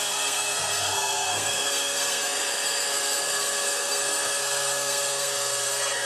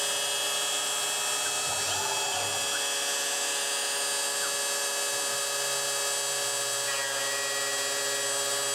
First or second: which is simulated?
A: first